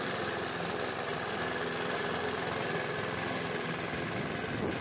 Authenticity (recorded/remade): recorded